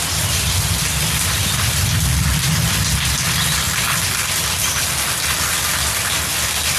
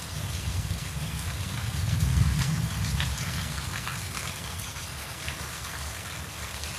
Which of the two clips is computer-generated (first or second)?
second